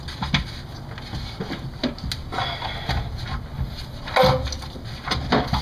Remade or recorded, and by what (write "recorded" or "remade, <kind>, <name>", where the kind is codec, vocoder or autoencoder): recorded